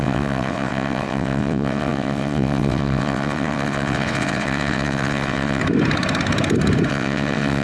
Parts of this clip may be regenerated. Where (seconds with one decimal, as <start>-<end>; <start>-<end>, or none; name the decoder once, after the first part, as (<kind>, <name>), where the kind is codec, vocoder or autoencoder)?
0.0-5.6 (vocoder, WaveNeXt); 6.9-7.6